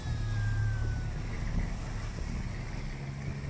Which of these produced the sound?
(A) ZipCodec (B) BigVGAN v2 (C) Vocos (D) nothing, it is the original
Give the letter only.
D